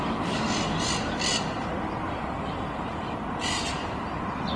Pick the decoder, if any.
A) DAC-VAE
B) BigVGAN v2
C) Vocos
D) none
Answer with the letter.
D